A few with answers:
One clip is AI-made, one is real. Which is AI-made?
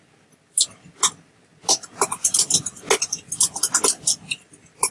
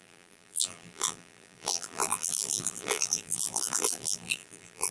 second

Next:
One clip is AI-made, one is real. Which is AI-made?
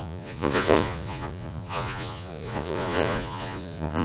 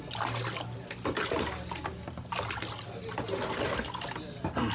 first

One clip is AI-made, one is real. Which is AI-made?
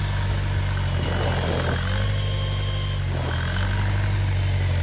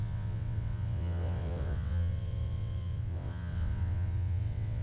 second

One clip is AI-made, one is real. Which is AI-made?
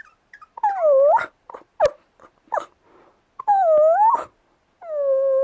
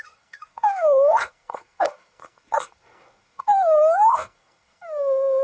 second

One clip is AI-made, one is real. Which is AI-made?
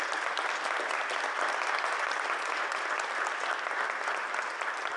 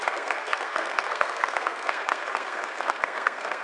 second